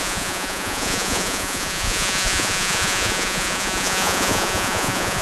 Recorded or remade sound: remade